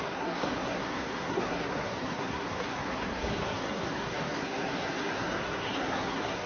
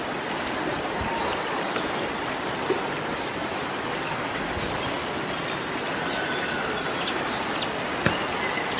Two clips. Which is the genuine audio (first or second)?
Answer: second